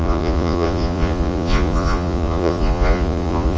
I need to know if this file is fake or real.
fake